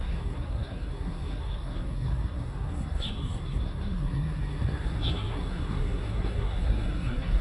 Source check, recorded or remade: remade